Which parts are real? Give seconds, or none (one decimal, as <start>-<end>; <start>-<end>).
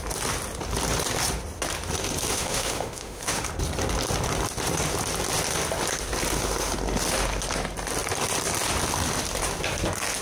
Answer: 0.0-2.3; 3.5-10.2